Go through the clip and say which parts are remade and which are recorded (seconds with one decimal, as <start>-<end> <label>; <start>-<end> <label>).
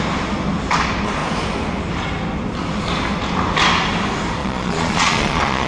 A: 0.0-4.4 recorded; 4.4-5.7 remade